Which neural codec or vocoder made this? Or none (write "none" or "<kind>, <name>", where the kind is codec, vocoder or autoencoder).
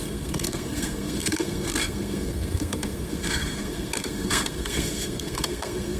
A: codec, SNAC